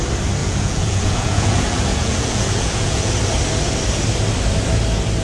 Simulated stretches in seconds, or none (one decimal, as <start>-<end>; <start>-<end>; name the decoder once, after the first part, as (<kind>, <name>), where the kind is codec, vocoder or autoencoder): 0.4-3.1 (vocoder, Vocos)